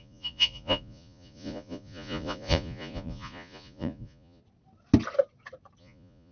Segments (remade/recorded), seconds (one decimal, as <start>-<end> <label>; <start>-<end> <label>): 0.0-4.4 remade; 4.4-5.8 recorded; 5.8-6.3 remade